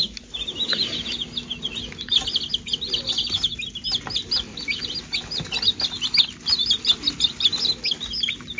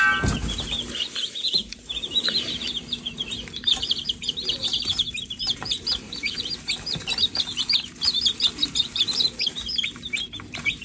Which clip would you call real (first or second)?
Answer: first